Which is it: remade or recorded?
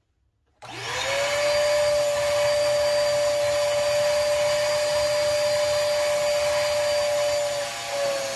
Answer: recorded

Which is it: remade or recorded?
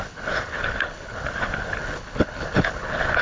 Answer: remade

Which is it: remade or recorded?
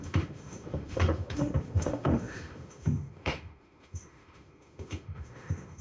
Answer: remade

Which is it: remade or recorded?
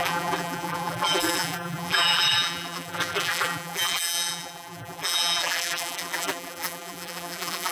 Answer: remade